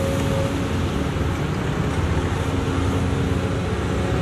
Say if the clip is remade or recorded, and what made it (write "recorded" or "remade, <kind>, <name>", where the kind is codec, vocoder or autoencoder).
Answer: recorded